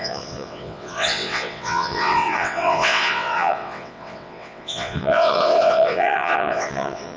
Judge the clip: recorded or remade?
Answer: remade